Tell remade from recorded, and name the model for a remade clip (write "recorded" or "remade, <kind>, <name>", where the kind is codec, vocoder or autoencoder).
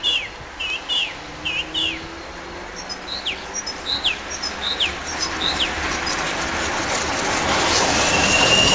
remade, vocoder, BigVGAN v2